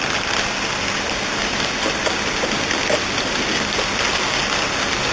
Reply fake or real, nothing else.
real